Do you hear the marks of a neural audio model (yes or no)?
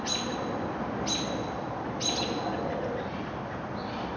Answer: no